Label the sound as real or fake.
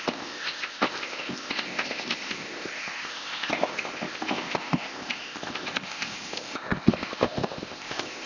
fake